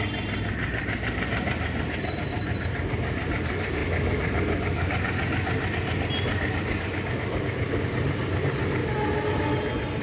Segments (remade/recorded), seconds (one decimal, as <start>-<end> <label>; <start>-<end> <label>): 0.0-3.8 remade; 3.8-7.8 recorded; 7.8-8.8 remade; 8.8-10.0 recorded